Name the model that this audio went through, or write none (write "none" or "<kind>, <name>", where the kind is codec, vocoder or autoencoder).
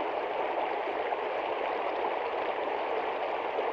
none